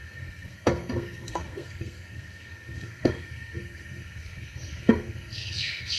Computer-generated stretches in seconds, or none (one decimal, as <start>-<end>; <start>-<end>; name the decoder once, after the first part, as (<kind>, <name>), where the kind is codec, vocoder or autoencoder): 0.0-6.0 (codec, SNAC)

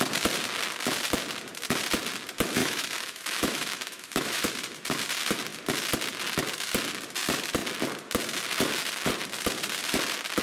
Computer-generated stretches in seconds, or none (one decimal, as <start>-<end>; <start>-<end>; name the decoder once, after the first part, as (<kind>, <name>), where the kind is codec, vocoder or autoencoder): 2.6-4.5 (autoencoder, DAC-VAE)

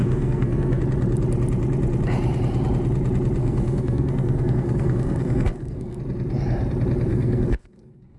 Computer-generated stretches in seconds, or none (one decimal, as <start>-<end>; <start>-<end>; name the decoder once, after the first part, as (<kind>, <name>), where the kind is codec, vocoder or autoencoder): 0.0-0.8 (codec, SNAC); 3.4-6.0; 7.1-8.2

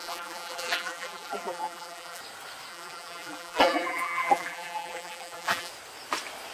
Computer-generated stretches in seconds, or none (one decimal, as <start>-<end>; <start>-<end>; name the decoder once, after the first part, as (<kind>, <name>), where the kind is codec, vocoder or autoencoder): 0.0-2.2 (vocoder, BigVGAN v2); 2.7-5.7